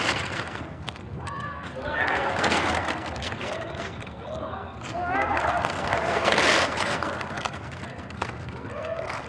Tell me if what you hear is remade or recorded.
remade